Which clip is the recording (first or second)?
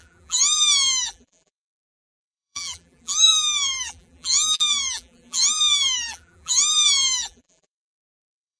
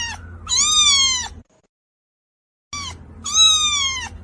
second